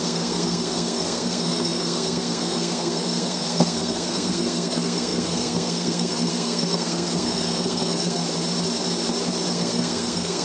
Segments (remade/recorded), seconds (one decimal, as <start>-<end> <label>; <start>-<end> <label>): 0.0-8.2 remade; 8.2-9.5 recorded; 9.5-10.4 remade